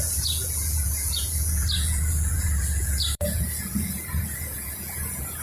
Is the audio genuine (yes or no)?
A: no